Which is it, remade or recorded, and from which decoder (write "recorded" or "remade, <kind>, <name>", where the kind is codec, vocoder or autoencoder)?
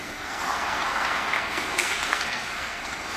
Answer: remade, codec, SNAC